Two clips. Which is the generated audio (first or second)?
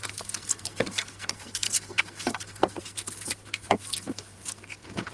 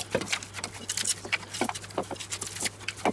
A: first